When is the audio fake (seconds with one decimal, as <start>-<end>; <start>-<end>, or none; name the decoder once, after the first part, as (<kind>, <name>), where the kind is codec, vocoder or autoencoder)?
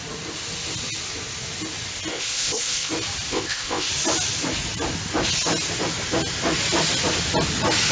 2.1-2.9 (codec, ZipCodec); 3.3-3.9